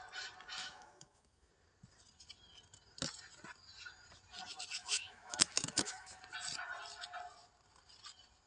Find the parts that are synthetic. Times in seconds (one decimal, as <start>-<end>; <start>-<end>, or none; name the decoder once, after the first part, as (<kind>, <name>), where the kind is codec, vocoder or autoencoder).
0.6-1.5 (autoencoder, DAC-VAE); 4.8-6.2